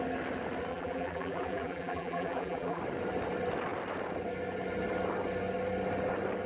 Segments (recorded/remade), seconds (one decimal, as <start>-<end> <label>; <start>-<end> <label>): 0.0-0.7 recorded; 0.7-2.8 remade; 2.8-6.5 recorded